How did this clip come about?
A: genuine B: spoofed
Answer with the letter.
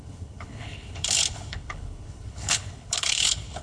B